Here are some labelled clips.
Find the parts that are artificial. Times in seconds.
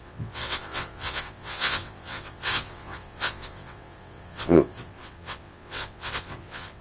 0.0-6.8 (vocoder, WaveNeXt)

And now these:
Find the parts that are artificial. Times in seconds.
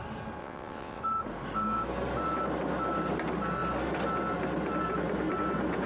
0.4-1.0 (vocoder, WaveNeXt)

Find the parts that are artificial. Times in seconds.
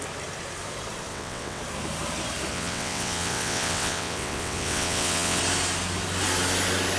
1.1-1.6 (vocoder, WaveNeXt); 2.5-5.4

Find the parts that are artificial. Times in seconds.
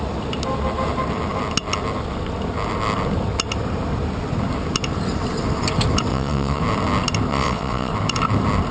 6.1-6.6 (vocoder, WaveNeXt); 7.3-7.9